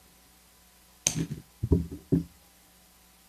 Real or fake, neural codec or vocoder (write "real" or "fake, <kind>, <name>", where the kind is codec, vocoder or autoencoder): real